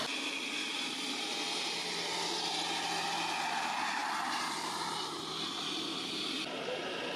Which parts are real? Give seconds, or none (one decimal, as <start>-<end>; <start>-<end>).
0.0-7.2